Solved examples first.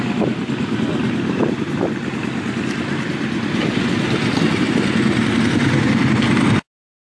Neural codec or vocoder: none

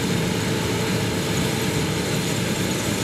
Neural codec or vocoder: none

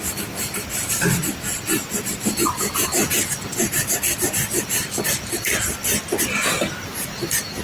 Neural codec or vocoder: none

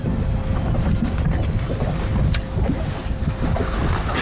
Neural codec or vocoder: none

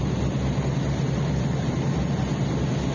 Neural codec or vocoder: none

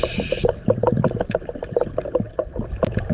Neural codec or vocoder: none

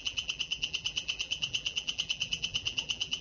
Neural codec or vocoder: vocoder, BigVGAN v2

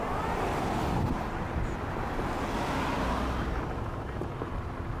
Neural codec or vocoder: none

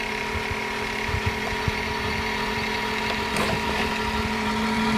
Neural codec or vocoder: vocoder, BigVGAN v2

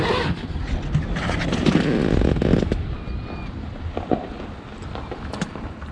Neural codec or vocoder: none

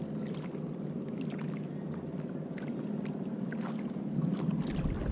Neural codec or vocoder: none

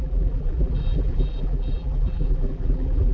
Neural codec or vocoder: vocoder, BigVGAN v2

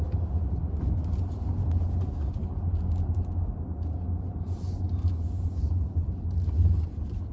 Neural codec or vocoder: none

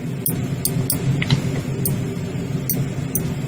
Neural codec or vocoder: none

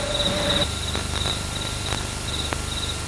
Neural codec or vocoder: none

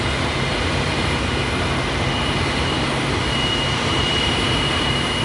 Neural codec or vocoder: vocoder, BigVGAN v2